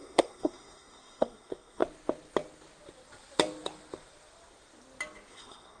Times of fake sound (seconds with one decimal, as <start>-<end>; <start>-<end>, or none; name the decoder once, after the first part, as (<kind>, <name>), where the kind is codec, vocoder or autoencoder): 0.0-1.8 (codec, SNAC); 5.3-5.8